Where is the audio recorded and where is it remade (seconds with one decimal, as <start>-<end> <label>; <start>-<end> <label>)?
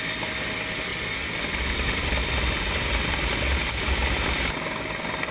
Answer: 0.0-5.3 recorded